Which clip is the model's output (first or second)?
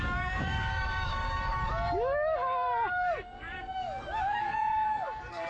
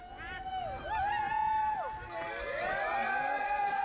first